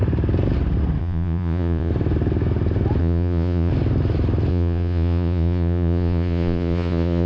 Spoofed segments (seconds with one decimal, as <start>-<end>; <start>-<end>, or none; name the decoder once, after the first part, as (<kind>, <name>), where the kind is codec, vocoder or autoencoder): 1.0-1.9 (vocoder, Vocos); 3.0-3.7; 4.5-7.3